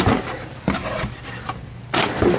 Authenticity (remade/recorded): recorded